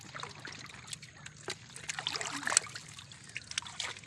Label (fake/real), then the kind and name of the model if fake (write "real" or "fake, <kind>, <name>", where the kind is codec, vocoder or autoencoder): real